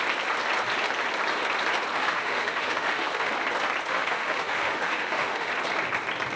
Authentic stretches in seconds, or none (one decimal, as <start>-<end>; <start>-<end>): 0.0-1.9; 3.3-3.9; 5.5-6.4